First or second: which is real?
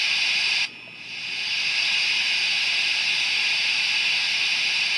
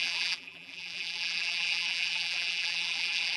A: first